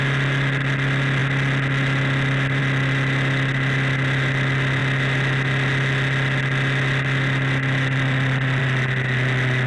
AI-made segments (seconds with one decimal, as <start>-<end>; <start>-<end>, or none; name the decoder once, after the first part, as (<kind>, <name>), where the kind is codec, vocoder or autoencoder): none